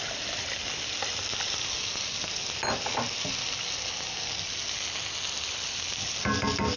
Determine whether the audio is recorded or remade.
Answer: recorded